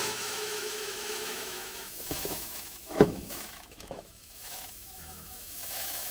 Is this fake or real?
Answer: fake